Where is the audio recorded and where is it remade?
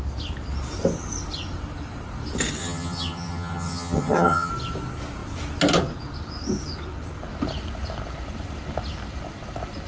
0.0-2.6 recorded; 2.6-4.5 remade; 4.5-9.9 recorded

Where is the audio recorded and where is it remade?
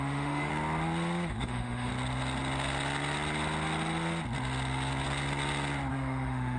0.0-0.5 remade; 0.5-1.3 recorded; 1.3-1.9 remade; 1.9-5.9 recorded; 5.9-6.6 remade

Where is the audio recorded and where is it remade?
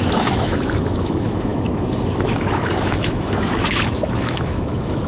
0.0-5.1 remade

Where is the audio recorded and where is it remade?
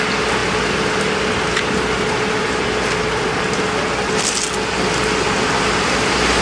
0.0-6.4 recorded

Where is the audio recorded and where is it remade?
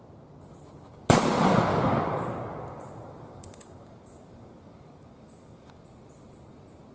0.0-1.7 recorded; 1.7-5.8 remade; 5.8-6.9 recorded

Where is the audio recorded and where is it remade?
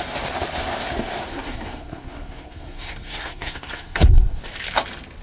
0.0-1.3 recorded; 1.3-4.4 remade; 4.4-5.2 recorded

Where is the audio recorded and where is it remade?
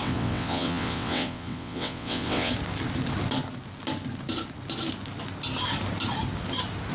0.0-2.5 remade; 2.5-6.9 recorded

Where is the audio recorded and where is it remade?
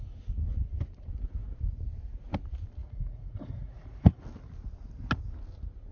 0.0-2.8 recorded; 2.8-4.2 remade; 4.2-5.9 recorded